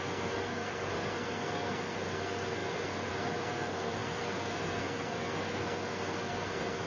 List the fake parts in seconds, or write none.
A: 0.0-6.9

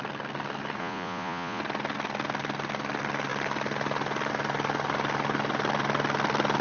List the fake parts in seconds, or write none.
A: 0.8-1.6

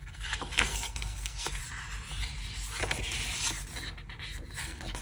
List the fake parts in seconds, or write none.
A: 0.0-1.6; 4.6-5.0

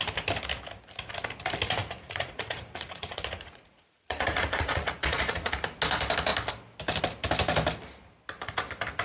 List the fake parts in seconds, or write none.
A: 1.8-5.5

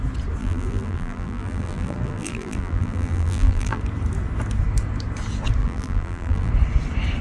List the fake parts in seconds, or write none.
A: 0.4-3.8; 5.6-6.5

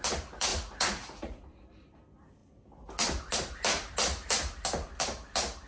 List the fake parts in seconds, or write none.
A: 0.5-1.4

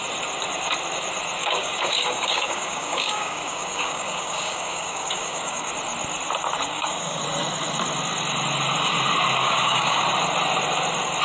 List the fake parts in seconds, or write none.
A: 1.4-5.7; 6.7-7.2; 9.4-10.0